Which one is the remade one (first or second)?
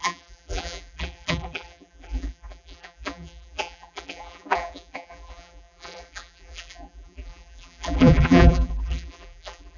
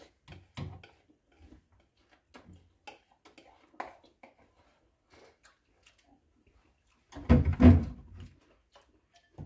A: first